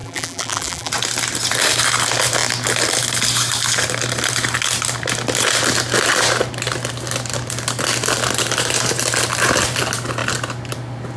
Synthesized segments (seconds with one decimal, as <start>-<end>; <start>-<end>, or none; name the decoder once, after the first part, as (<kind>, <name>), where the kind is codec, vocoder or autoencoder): 0.0-0.9 (vocoder, BigVGAN v2)